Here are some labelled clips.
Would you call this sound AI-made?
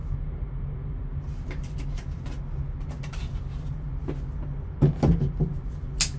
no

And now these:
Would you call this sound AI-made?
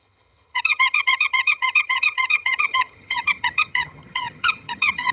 yes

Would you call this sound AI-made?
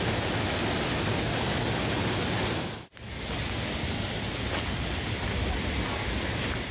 no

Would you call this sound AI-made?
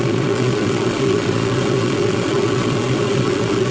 yes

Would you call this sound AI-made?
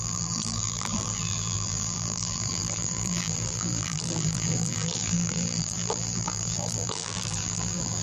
yes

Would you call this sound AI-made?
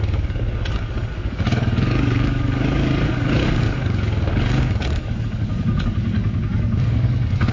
yes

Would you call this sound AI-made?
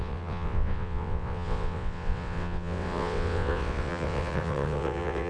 yes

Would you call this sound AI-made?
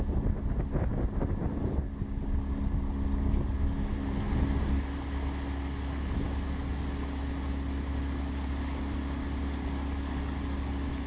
no